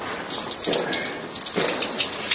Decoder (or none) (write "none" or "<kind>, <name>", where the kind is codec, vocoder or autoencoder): none